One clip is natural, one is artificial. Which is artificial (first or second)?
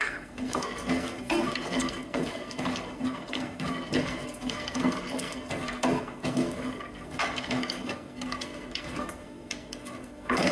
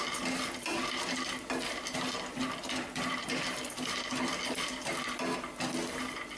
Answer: first